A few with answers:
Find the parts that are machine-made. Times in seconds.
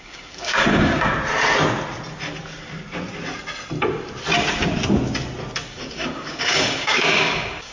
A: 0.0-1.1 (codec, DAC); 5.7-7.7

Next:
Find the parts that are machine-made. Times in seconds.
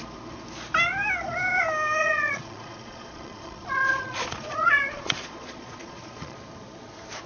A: 2.0-6.4 (vocoder, Vocos)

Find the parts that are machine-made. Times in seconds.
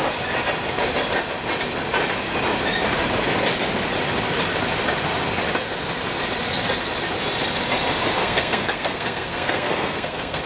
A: 8.2-10.5 (codec, SNAC)